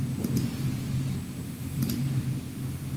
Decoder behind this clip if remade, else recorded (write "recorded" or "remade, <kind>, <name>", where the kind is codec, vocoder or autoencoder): recorded